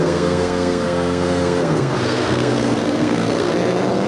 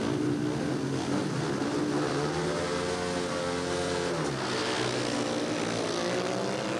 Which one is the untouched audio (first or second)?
second